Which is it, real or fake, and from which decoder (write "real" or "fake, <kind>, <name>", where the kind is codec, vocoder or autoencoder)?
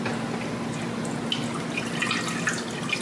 real